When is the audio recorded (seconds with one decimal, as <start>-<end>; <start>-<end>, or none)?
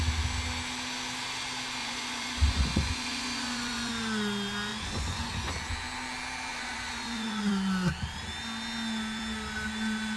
0.0-1.8; 3.9-4.7; 5.5-6.5; 7.5-10.2